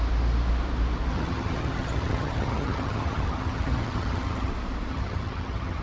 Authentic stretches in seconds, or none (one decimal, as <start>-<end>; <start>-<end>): 0.0-1.1; 4.5-4.9